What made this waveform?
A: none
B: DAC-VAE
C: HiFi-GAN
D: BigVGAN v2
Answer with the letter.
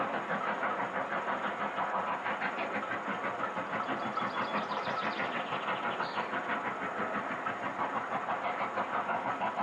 A